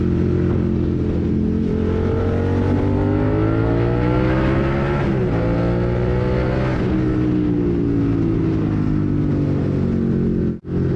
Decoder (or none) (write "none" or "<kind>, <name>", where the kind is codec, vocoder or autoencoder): none